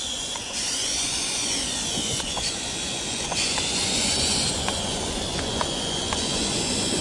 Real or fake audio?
fake